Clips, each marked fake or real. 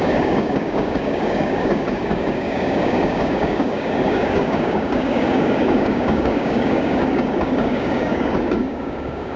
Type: fake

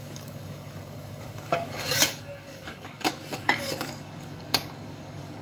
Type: fake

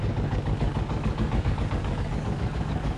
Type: fake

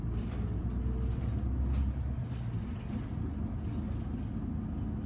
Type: real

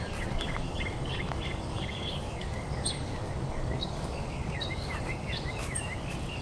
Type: fake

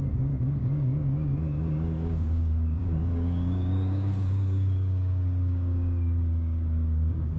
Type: fake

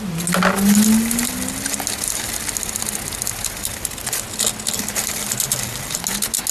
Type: real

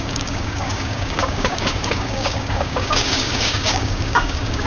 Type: fake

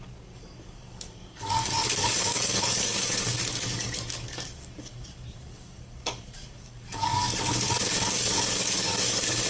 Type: fake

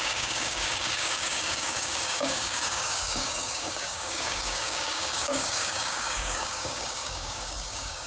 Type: fake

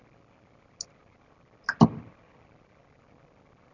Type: real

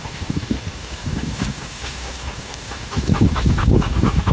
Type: fake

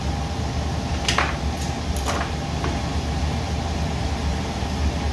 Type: real